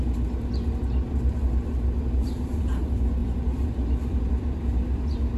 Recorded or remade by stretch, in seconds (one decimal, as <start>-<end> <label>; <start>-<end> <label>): 0.0-2.2 recorded; 2.2-2.8 remade; 2.8-5.4 recorded